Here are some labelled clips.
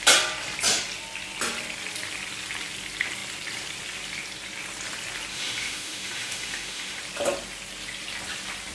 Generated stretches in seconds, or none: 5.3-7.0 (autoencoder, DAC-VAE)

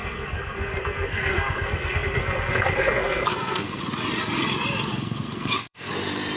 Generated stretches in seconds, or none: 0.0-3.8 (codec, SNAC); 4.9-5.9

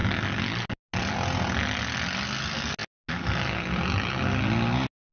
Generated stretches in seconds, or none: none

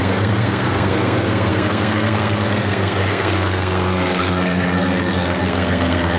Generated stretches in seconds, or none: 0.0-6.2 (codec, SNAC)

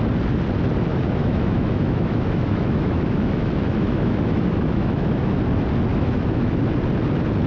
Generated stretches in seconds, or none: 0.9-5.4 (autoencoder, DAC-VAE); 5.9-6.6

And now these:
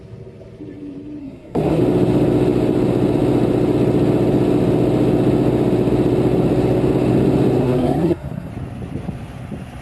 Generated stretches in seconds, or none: 1.2-1.8 (codec, SNAC); 7.6-8.5

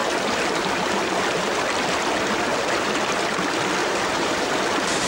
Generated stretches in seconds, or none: 3.8-4.5 (vocoder, BigVGAN v2)

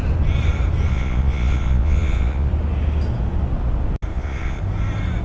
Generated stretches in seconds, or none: 0.9-2.5 (vocoder, Vocos); 4.1-4.6